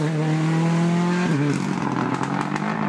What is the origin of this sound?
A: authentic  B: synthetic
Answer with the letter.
A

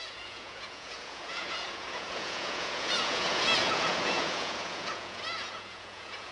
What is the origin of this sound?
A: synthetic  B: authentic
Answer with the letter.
A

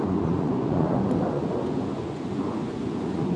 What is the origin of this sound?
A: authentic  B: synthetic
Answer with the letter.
B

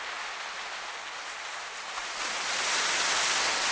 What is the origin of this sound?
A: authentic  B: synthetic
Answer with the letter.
A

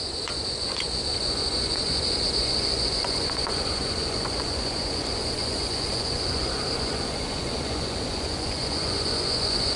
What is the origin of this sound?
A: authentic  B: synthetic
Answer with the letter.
B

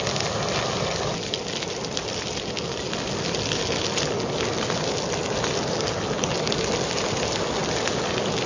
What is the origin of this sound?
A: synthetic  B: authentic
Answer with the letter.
B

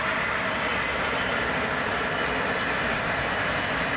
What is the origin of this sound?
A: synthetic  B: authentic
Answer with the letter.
B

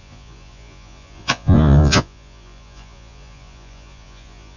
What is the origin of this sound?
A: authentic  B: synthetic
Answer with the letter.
B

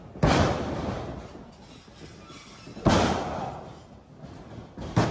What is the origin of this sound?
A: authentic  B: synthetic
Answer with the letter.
A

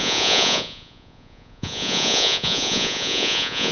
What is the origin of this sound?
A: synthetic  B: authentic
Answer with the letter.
A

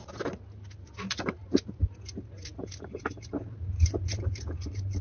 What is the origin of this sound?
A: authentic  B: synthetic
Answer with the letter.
A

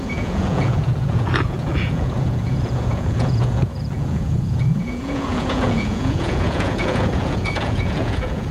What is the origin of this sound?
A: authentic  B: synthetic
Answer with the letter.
B